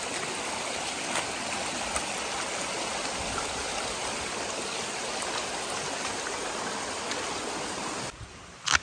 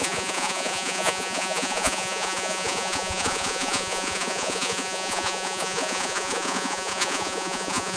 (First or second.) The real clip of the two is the first